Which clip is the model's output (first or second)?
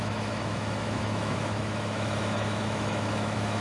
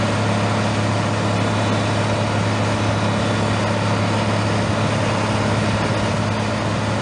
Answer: first